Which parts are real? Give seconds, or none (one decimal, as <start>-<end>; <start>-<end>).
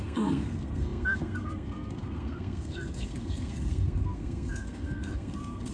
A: none